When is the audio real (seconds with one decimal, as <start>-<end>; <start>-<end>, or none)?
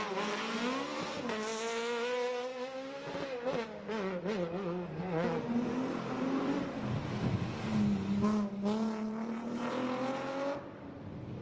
0.0-11.4